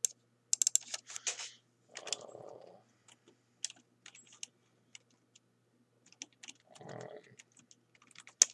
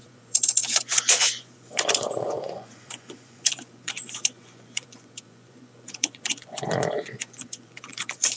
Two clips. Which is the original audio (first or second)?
first